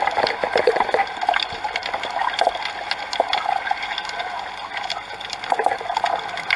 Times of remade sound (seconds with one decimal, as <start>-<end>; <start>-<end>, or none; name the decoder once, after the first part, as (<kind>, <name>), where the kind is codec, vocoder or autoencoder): 0.0-2.2 (vocoder, BigVGAN v2)

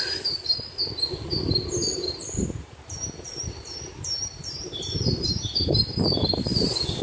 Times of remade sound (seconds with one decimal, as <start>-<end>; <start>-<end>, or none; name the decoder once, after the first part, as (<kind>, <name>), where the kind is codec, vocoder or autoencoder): 1.8-6.0 (vocoder, BigVGAN v2)

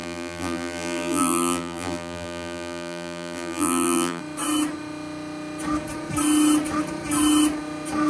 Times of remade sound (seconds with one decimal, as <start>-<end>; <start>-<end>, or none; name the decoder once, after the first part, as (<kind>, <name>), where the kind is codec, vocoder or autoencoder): 0.0-4.2 (vocoder, BigVGAN v2)

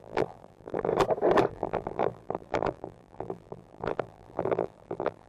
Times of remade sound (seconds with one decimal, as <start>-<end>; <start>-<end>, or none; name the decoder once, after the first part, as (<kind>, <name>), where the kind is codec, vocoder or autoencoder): 0.0-0.9 (vocoder, BigVGAN v2); 1.5-5.3

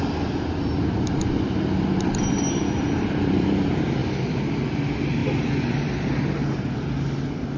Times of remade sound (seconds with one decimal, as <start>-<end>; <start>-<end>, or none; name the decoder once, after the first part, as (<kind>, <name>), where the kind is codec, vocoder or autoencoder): 0.0-4.0 (vocoder, BigVGAN v2); 4.7-6.4

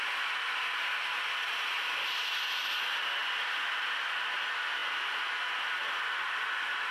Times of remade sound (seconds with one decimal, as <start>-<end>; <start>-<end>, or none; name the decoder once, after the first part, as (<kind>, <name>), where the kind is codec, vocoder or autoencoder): none

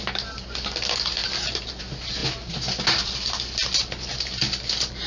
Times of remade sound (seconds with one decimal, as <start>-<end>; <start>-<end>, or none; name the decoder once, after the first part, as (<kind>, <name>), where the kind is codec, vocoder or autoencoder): none

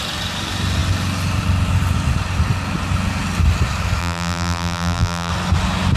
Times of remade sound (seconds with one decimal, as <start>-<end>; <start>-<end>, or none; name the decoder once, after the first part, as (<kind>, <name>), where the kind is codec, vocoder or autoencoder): 4.0-5.3 (vocoder, BigVGAN v2)